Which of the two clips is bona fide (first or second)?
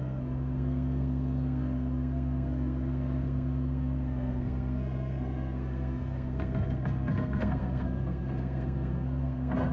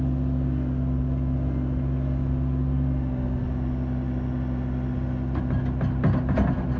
second